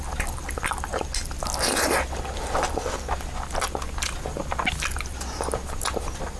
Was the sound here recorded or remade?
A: recorded